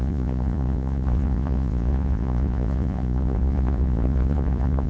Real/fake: fake